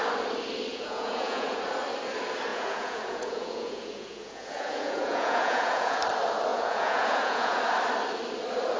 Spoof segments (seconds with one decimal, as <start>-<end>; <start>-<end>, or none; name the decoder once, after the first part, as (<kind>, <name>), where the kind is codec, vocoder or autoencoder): 0.7-1.6 (vocoder, Vocos); 2.5-6.0; 6.5-7.6